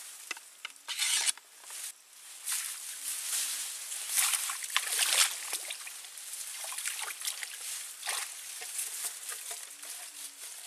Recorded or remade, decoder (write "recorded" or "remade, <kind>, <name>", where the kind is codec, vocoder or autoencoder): recorded